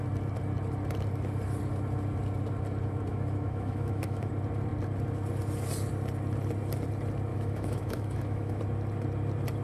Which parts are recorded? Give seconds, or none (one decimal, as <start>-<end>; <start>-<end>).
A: 0.0-3.1; 4.3-7.3; 8.6-9.6